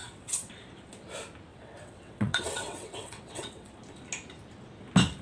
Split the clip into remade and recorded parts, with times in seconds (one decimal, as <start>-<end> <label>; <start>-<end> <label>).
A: 0.0-0.5 remade; 0.5-1.5 recorded; 1.5-3.7 remade; 3.7-5.2 recorded